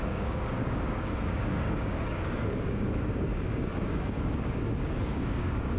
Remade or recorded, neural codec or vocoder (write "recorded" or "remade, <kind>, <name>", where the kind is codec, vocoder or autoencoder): remade, codec, DAC